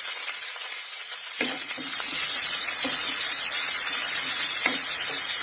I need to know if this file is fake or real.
fake